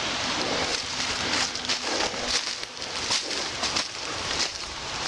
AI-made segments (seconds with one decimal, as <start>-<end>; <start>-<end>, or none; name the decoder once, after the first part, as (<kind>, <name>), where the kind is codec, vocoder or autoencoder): 0.0-0.7 (vocoder, BigVGAN v2); 3.8-5.1